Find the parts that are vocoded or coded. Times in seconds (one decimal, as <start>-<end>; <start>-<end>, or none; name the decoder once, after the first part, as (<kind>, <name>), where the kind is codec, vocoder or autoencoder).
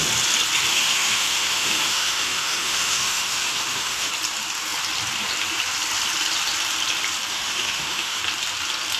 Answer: 0.7-4.1 (autoencoder, DAC-VAE); 7.3-8.2